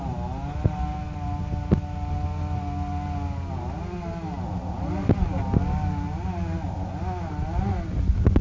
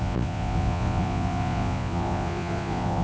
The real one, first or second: first